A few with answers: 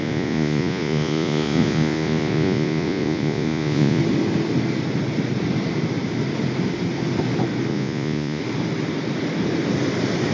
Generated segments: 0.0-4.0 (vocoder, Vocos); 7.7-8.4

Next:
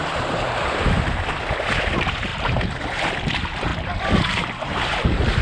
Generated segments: 0.0-3.7 (vocoder, BigVGAN v2); 4.2-5.4

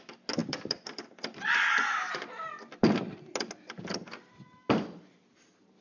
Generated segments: 0.4-1.0 (vocoder, BigVGAN v2)

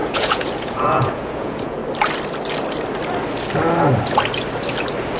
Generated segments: 0.0-1.8 (vocoder, Vocos)

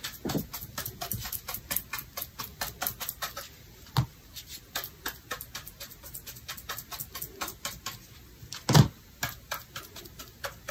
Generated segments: 2.5-3.4 (vocoder, BigVGAN v2)

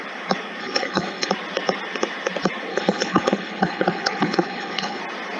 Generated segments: 0.6-1.3 (codec, HILCodec); 2.7-5.0

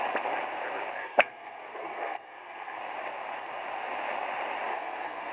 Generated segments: 1.0-2.8 (codec, SNAC); 4.7-5.3

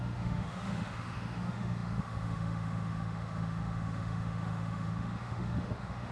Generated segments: 0.0-6.1 (autoencoder, DAC-VAE)